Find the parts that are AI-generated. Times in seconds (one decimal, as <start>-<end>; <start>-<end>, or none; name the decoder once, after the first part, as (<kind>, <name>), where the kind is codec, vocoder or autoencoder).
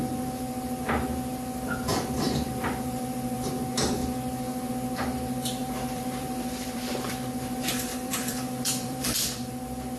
1.9-3.5 (vocoder, BigVGAN v2); 5.6-7.1; 7.9-9.5